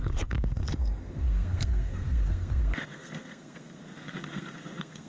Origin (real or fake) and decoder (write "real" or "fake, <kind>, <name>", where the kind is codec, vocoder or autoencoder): fake, codec, SNAC